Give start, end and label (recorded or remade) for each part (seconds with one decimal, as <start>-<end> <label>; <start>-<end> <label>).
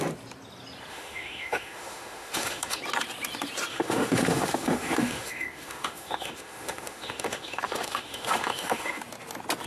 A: 0.0-0.9 recorded; 0.9-2.8 remade; 2.8-3.7 recorded; 3.7-9.0 remade; 9.0-9.7 recorded